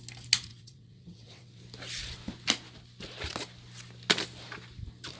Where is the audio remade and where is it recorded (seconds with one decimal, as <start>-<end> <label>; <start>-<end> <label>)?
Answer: 0.0-0.5 recorded; 0.5-1.6 remade; 1.6-5.2 recorded